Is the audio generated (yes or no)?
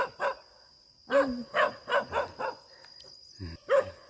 no